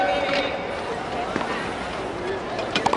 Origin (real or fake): real